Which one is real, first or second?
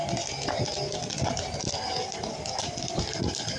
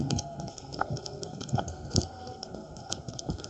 first